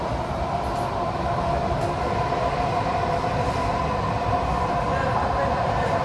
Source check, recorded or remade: recorded